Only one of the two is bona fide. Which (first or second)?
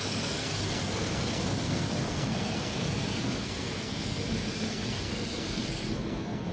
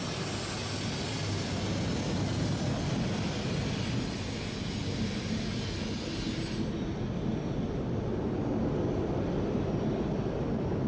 second